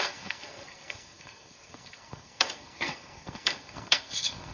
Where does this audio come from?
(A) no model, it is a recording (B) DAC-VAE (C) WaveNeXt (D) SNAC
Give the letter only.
D